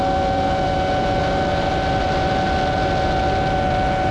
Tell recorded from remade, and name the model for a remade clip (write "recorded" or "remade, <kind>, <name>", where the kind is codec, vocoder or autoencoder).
recorded